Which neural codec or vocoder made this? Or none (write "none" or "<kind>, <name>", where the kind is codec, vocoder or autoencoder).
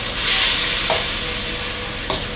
none